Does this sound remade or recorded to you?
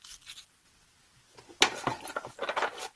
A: recorded